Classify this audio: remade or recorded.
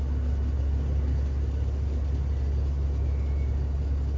recorded